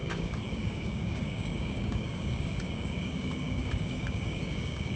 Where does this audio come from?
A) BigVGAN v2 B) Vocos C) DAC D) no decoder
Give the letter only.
C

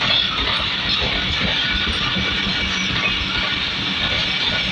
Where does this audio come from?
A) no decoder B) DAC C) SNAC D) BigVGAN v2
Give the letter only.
A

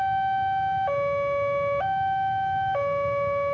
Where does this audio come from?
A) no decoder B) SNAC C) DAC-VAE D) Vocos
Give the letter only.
A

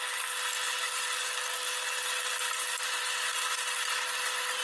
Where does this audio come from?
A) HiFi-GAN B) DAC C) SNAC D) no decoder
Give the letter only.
D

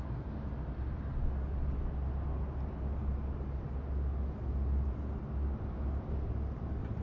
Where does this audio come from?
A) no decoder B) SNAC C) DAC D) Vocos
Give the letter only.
A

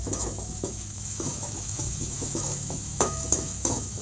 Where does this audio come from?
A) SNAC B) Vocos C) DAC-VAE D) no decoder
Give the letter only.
C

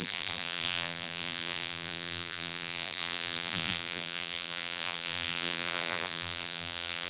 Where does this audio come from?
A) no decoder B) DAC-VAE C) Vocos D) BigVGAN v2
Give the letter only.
D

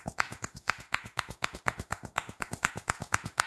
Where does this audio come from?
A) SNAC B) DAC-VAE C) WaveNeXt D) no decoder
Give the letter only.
B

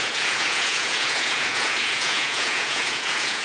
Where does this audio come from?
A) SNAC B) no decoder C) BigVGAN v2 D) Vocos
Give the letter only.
D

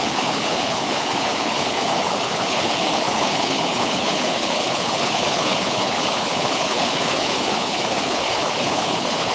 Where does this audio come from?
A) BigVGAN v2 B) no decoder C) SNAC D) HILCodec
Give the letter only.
D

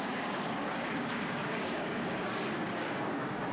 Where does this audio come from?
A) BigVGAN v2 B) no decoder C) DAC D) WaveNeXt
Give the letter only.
C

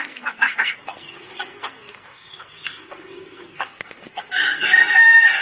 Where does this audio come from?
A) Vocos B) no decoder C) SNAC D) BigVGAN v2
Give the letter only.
C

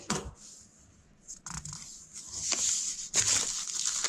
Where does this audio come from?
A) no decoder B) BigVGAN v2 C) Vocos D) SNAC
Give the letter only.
A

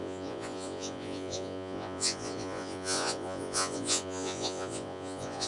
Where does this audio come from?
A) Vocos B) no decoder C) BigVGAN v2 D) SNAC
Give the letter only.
A